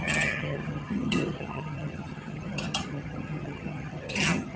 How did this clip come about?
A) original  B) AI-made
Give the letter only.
B